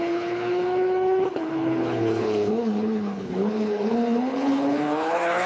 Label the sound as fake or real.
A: fake